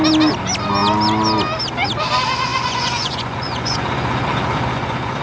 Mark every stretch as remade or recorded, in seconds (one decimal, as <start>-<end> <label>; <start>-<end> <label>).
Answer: 0.0-2.5 recorded; 2.5-5.2 remade